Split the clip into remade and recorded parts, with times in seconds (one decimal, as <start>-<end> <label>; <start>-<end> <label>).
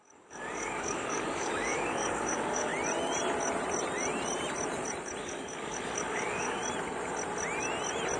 0.0-2.7 remade; 2.7-5.2 recorded; 5.2-6.6 remade; 6.6-8.2 recorded